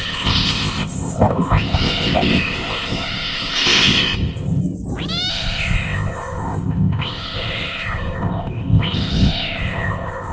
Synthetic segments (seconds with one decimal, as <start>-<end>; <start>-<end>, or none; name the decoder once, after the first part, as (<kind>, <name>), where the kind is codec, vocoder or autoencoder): 0.0-4.6 (codec, ZipCodec); 5.3-10.3